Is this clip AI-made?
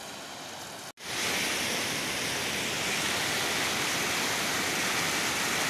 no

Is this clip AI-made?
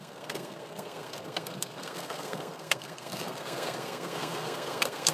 yes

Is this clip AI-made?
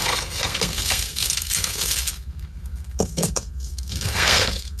yes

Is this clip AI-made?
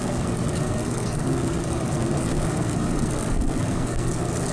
yes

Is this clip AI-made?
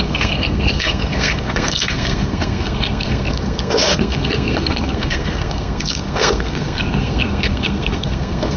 yes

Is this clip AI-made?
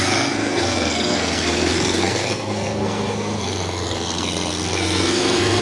yes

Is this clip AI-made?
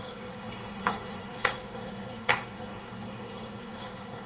yes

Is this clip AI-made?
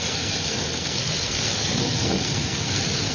yes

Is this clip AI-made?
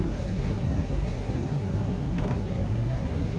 yes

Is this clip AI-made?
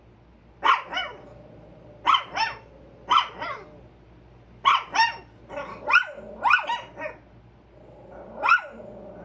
no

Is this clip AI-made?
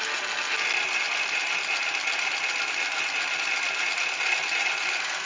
no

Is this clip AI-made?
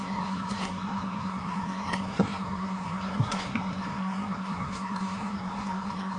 yes